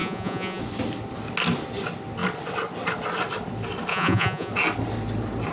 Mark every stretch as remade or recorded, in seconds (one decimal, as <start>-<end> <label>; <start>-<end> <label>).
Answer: 0.0-0.6 remade; 0.6-3.9 recorded; 3.9-4.5 remade; 4.5-5.5 recorded